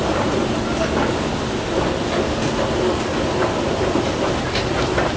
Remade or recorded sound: recorded